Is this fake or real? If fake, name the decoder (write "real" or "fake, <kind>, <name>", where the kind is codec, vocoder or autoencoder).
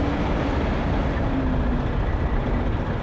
real